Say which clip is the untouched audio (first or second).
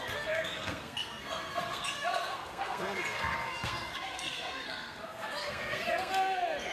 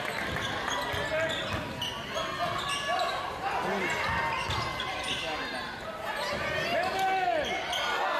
second